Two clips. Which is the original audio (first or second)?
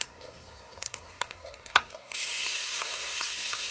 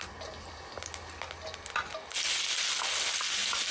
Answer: second